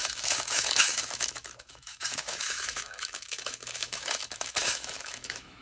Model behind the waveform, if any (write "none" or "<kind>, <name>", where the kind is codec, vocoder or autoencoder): autoencoder, DAC-VAE